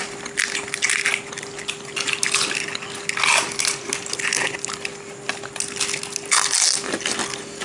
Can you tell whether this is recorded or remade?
recorded